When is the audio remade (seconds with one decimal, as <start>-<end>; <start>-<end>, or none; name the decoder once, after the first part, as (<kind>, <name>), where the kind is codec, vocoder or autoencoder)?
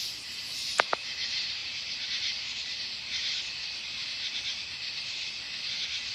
1.6-5.3 (vocoder, BigVGAN v2)